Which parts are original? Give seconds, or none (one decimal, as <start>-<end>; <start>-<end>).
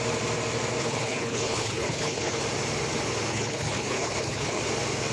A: 0.0-0.8; 2.4-3.3; 4.6-5.1